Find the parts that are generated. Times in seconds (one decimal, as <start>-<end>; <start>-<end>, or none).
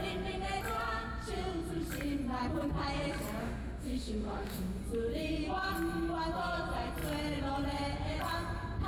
3.4-4.8